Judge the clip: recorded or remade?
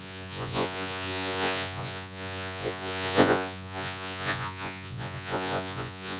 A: remade